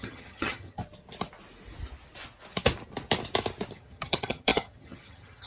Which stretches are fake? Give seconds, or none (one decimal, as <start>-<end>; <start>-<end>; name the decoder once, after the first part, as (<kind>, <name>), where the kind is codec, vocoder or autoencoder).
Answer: 0.0-0.8 (vocoder, HiFi-GAN); 3.7-5.5